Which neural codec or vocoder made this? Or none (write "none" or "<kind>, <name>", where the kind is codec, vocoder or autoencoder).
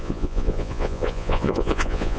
vocoder, Vocos